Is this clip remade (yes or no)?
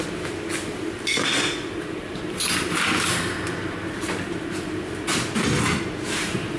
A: no